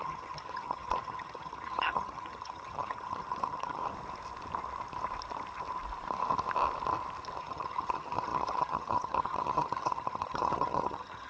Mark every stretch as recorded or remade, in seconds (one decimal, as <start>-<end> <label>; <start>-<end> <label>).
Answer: 0.0-3.8 remade; 3.8-7.4 recorded; 7.4-11.3 remade

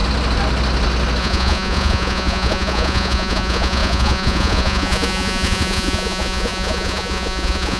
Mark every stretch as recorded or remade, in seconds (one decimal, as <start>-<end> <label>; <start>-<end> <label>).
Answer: 0.0-1.2 recorded; 1.2-7.8 remade

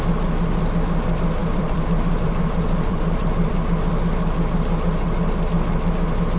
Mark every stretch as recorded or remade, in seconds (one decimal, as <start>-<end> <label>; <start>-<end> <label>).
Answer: 0.0-1.4 recorded; 1.4-3.5 remade; 3.5-6.4 recorded

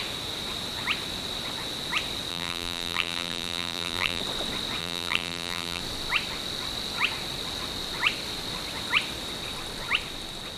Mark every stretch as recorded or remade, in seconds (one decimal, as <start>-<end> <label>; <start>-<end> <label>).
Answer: 0.0-2.3 recorded; 2.3-4.2 remade; 4.2-4.8 recorded; 4.8-5.8 remade; 5.8-10.6 recorded

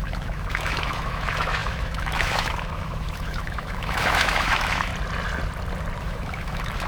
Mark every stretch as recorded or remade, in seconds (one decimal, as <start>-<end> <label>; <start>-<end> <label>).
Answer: 0.0-4.9 remade; 4.9-6.0 recorded; 6.0-6.9 remade

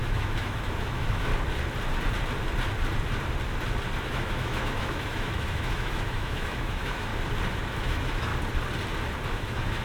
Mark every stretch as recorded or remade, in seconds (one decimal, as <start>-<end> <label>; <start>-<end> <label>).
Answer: 0.0-1.3 remade; 1.3-4.0 recorded; 4.0-7.1 remade; 7.1-7.8 recorded; 7.8-8.3 remade; 8.3-9.3 recorded; 9.3-9.8 remade

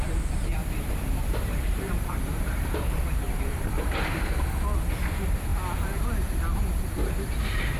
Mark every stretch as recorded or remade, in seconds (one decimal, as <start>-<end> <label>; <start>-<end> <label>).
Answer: 0.0-0.6 recorded; 0.6-4.1 remade; 4.1-7.8 recorded